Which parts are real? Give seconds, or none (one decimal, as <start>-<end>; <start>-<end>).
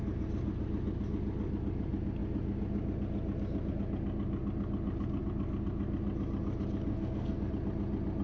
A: 0.0-6.9; 7.5-8.2